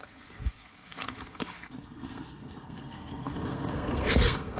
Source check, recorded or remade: remade